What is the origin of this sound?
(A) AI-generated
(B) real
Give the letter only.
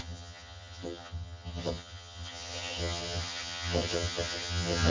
A